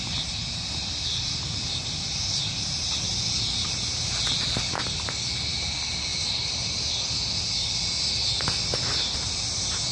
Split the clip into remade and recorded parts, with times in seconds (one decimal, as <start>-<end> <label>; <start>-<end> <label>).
0.0-1.1 recorded; 1.1-3.1 remade; 3.1-6.1 recorded; 6.1-6.9 remade; 6.9-9.9 recorded